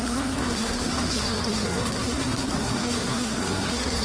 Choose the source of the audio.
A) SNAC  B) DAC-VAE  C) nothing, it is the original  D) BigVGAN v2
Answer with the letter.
A